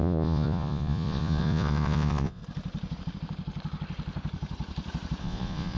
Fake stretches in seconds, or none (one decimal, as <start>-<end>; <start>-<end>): 0.0-2.4; 5.2-5.8